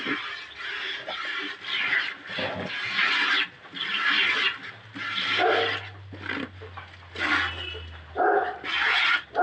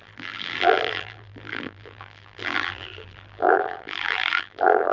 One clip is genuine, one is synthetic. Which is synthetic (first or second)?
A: second